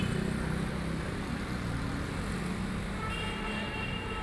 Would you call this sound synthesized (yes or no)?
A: no